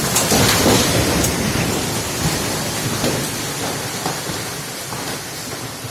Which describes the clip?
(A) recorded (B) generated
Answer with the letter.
B